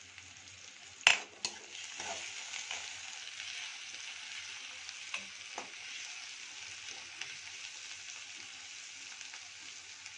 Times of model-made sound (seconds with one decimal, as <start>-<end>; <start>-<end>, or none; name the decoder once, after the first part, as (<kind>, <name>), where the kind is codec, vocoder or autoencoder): none

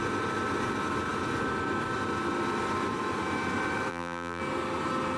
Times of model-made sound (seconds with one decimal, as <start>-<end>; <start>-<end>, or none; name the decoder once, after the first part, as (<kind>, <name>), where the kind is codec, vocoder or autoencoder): 3.9-4.4 (vocoder, BigVGAN v2)